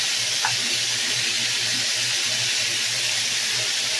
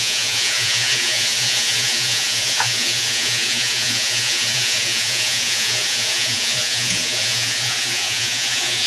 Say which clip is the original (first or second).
first